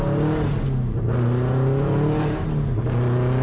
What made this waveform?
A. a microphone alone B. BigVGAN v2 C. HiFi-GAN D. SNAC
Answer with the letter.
A